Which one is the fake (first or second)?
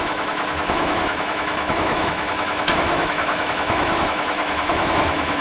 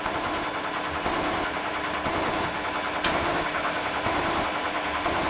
first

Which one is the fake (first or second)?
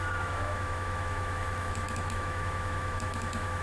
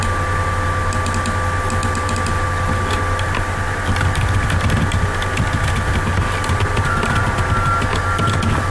first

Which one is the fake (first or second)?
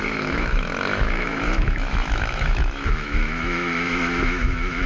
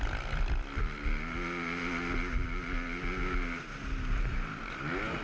first